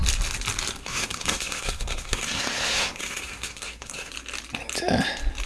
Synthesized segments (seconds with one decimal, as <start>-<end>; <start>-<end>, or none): 0.8-4.1